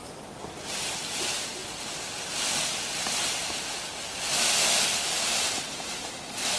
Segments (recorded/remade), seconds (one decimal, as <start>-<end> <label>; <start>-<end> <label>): 0.0-1.2 recorded; 1.2-1.6 remade; 1.6-5.0 recorded; 5.0-6.6 remade